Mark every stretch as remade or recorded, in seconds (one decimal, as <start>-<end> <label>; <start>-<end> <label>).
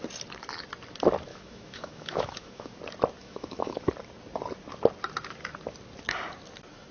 0.0-1.3 recorded; 1.3-2.8 remade; 2.8-3.2 recorded; 3.2-3.9 remade; 3.9-6.9 recorded